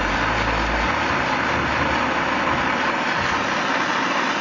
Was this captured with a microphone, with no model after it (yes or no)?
yes